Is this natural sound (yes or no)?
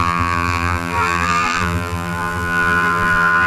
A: no